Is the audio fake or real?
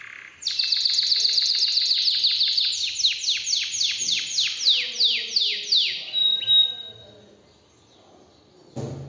real